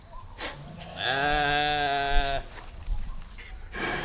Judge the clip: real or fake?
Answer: real